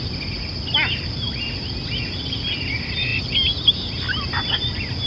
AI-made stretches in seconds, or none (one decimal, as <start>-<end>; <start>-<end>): none